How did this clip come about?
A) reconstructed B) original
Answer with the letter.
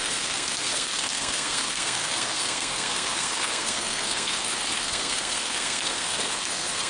A